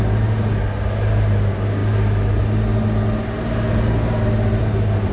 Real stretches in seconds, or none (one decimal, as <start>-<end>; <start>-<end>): 0.0-5.1